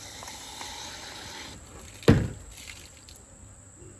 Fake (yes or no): no